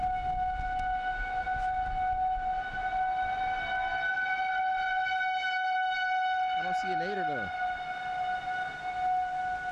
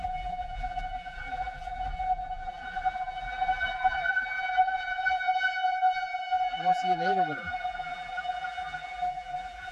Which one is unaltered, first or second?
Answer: first